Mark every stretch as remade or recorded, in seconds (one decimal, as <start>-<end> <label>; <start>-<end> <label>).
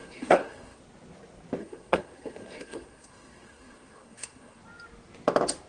0.0-0.8 remade; 0.8-1.6 recorded; 1.6-4.6 remade; 4.6-5.7 recorded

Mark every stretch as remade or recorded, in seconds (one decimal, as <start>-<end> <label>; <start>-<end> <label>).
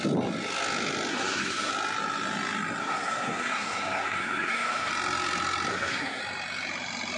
0.0-1.1 recorded; 1.1-1.7 remade; 1.7-2.8 recorded; 2.8-4.9 remade; 4.9-5.7 recorded; 5.7-6.2 remade; 6.2-7.2 recorded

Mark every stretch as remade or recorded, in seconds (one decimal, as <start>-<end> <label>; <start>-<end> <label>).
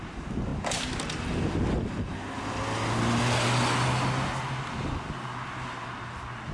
0.0-6.5 recorded